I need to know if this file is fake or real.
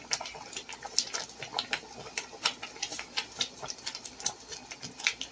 real